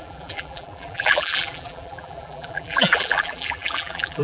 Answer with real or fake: fake